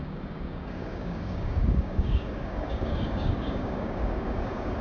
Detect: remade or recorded remade